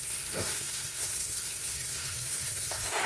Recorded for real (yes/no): no